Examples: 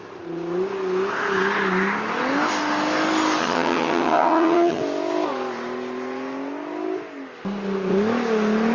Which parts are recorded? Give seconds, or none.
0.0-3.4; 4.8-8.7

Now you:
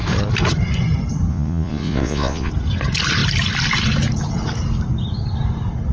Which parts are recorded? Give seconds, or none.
0.0-1.3; 2.5-5.9

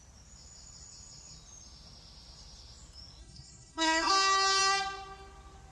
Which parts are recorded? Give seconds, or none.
0.0-3.2; 4.1-5.7

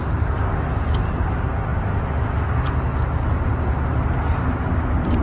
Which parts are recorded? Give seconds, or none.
0.0-5.2

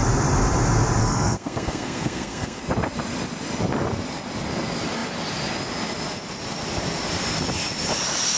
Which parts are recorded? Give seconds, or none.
0.0-1.0; 2.6-8.4

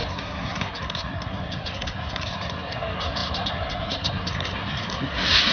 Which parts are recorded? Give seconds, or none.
none

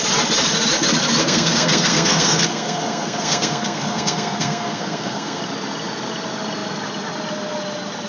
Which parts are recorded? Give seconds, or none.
0.0-1.2; 5.4-8.1